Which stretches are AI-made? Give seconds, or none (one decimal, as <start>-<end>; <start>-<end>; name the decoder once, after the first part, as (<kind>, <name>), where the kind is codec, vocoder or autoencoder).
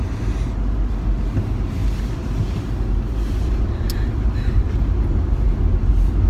none